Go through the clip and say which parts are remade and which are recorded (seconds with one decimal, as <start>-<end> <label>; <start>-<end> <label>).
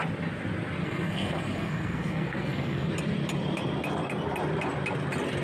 0.0-0.8 recorded; 0.8-2.9 remade; 2.9-5.4 recorded